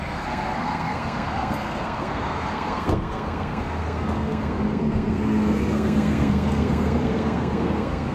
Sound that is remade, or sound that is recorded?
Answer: remade